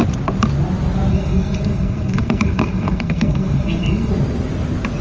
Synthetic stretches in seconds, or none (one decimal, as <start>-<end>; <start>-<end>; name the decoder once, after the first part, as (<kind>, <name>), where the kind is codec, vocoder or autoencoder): 1.1-4.1 (codec, SNAC)